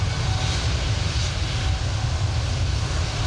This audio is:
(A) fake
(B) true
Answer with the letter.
B